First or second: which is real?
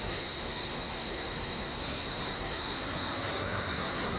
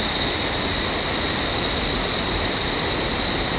second